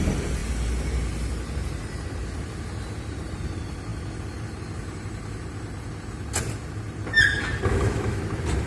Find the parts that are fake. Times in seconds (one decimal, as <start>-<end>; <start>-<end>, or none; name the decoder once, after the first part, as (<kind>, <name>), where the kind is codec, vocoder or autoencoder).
7.7-8.2 (autoencoder, DAC-VAE)

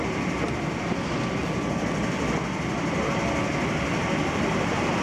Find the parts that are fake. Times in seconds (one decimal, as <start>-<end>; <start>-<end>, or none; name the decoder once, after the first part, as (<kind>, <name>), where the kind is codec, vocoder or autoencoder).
none